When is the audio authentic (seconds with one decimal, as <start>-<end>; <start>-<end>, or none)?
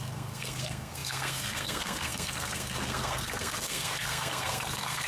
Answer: none